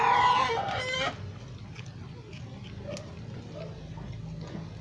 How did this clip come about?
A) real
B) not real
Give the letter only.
A